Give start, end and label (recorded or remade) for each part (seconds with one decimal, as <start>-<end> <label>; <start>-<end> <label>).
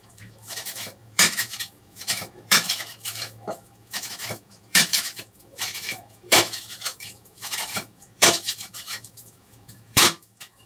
0.0-10.7 remade